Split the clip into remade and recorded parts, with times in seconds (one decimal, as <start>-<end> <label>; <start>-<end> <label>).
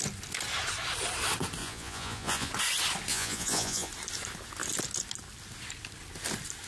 0.0-1.6 recorded; 1.6-2.5 remade; 2.5-3.1 recorded; 3.1-3.9 remade; 3.9-6.7 recorded